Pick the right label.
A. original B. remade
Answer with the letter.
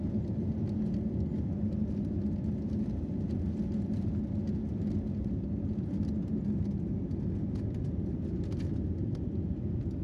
A